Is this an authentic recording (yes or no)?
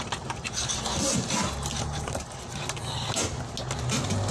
yes